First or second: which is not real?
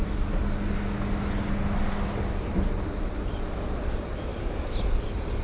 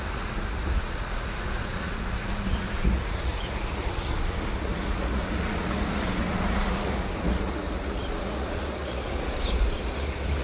second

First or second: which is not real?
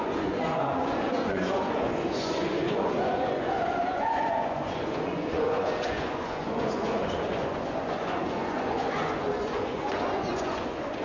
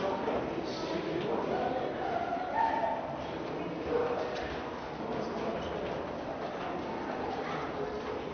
first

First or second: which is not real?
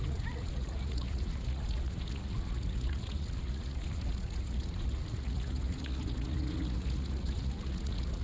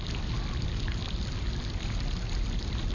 first